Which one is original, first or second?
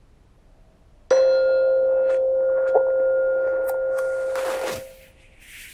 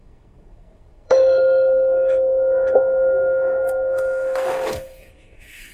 first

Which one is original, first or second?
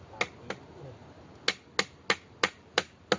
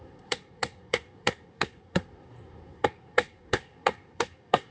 first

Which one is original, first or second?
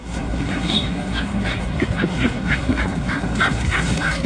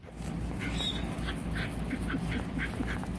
second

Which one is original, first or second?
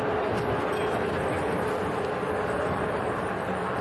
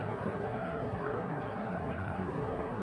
first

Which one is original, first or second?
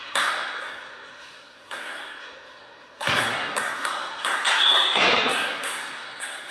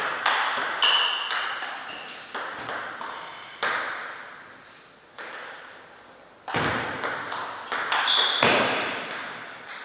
second